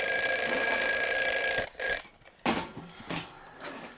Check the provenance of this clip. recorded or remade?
recorded